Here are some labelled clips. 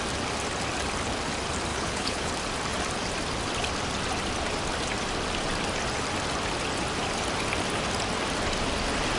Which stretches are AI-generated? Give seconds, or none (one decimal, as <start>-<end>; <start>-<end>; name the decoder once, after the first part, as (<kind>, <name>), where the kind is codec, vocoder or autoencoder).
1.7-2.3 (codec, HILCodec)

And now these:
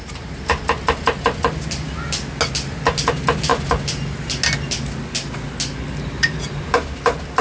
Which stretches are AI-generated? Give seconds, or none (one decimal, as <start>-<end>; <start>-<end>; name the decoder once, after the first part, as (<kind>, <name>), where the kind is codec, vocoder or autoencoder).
none

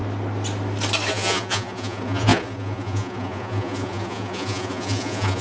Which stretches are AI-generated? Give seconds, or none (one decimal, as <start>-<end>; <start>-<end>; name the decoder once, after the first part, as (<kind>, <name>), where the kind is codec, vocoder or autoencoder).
1.1-5.4 (vocoder, Vocos)

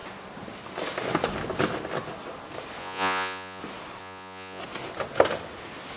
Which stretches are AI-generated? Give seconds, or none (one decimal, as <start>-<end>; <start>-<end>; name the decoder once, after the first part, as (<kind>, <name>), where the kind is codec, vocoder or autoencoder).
2.8-3.6 (vocoder, Vocos); 4.0-4.6